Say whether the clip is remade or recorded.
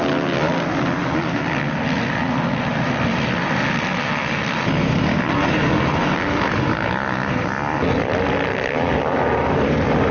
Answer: recorded